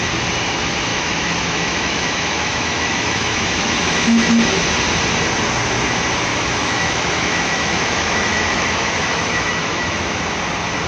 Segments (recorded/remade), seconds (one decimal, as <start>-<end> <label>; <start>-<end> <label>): 0.0-0.9 recorded; 0.9-4.3 remade; 4.3-6.3 recorded; 6.3-10.2 remade; 10.2-10.9 recorded